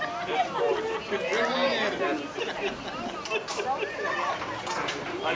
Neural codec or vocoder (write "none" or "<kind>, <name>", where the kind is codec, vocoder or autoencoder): none